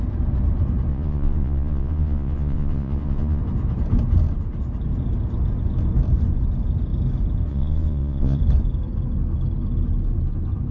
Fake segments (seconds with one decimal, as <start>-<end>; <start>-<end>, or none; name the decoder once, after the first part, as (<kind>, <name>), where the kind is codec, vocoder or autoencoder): 0.9-3.4 (vocoder, Vocos); 7.5-8.4